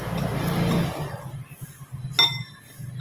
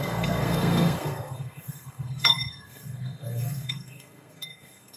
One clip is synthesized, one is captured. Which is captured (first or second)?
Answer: first